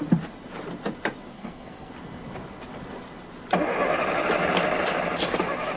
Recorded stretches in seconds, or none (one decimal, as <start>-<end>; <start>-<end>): 0.0-1.3; 1.9-5.8